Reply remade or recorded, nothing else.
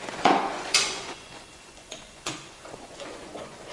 remade